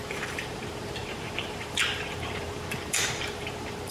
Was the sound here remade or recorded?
remade